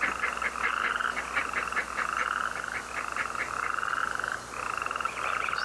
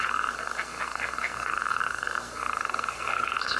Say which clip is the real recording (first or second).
first